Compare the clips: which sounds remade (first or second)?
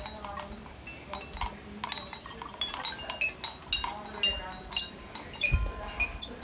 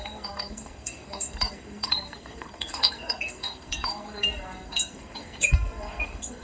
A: second